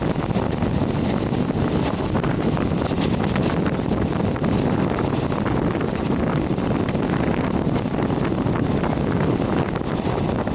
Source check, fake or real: real